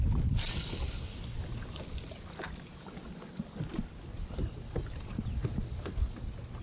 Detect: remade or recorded recorded